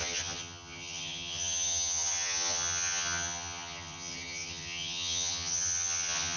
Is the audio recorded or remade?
remade